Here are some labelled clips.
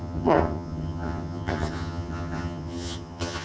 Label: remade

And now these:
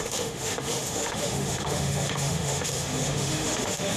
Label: remade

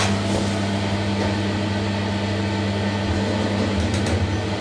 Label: recorded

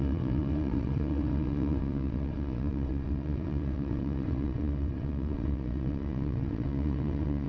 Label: remade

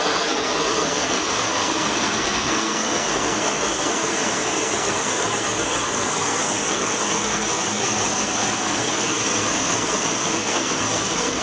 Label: remade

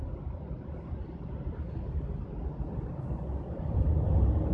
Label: recorded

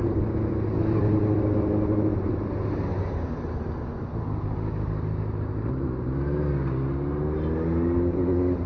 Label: recorded